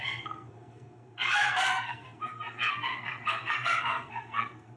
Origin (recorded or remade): remade